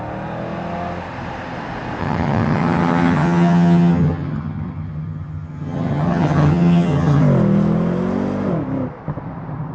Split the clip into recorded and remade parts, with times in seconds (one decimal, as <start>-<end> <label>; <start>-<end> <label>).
0.0-2.0 recorded; 2.0-7.2 remade; 7.2-9.7 recorded